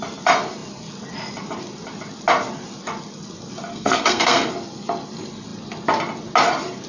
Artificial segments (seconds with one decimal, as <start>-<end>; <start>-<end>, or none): 3.7-4.5